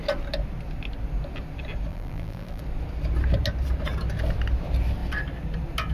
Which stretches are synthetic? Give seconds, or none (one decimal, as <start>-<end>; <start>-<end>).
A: 1.9-2.6